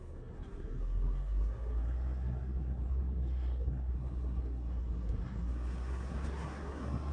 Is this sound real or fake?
fake